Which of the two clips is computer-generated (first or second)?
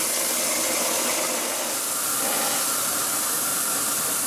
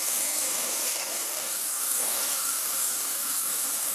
second